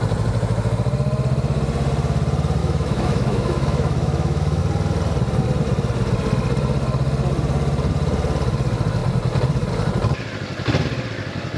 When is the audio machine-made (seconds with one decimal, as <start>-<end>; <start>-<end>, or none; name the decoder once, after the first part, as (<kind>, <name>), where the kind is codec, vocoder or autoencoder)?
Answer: 2.6-4.6 (autoencoder, DAC-VAE)